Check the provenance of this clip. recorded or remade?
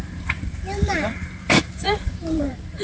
remade